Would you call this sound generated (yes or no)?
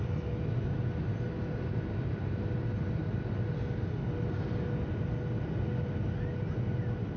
no